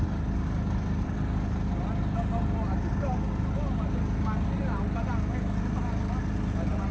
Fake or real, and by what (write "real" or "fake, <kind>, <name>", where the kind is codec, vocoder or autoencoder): real